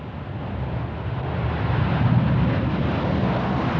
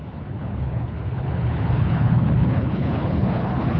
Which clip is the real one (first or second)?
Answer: first